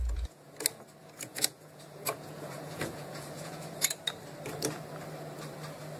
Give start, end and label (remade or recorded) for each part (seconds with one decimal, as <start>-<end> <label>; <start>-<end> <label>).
0.0-0.5 remade; 0.5-1.0 recorded; 1.0-3.9 remade; 3.9-6.0 recorded